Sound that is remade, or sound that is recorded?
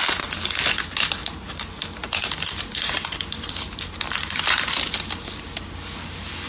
recorded